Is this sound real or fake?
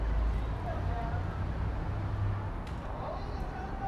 real